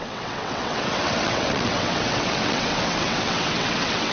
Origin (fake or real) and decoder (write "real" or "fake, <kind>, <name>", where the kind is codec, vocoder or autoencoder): fake, vocoder, WaveNeXt